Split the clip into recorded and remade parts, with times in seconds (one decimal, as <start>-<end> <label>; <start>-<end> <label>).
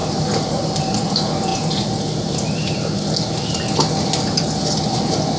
0.0-5.4 recorded